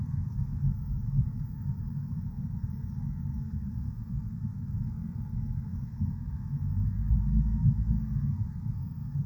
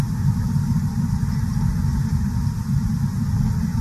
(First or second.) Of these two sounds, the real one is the second